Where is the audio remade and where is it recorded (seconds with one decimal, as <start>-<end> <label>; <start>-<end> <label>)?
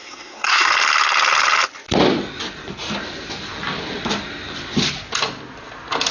0.0-0.7 remade; 0.7-6.1 recorded